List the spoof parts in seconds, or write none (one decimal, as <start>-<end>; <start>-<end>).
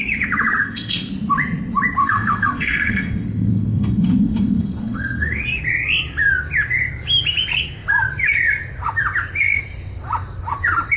0.6-1.1; 2.0-5.4